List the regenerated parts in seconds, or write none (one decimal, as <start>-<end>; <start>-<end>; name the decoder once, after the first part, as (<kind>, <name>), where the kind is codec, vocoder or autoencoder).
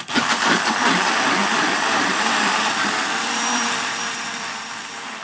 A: 1.4-4.5 (vocoder, BigVGAN v2)